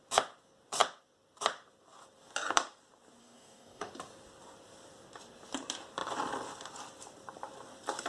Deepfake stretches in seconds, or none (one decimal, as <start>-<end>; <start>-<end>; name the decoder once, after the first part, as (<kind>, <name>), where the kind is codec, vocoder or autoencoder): 3.2-3.9 (codec, DAC)